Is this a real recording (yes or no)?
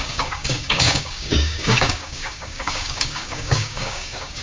no